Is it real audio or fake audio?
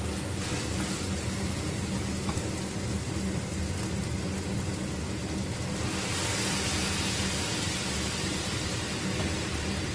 real